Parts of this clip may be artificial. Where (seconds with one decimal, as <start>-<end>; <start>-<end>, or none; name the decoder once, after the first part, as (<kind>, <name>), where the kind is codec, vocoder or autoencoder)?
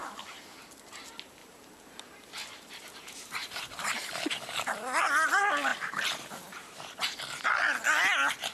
1.4-4.1 (vocoder, BigVGAN v2); 5.7-7.0